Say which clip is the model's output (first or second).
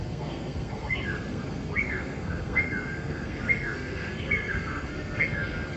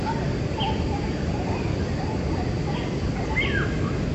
first